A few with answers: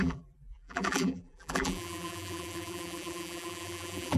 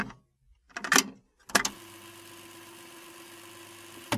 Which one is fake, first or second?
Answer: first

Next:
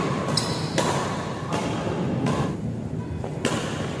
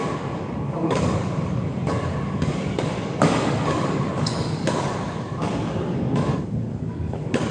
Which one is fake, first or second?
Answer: second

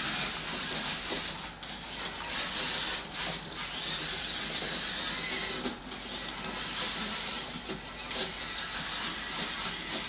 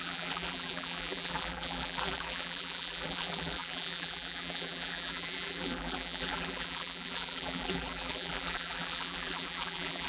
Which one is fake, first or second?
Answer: second